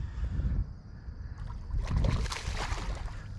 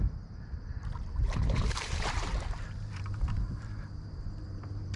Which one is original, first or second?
first